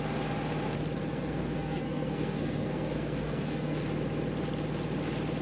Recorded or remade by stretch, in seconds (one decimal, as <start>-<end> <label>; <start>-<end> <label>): 0.0-1.0 recorded; 1.0-3.8 remade; 3.8-5.4 recorded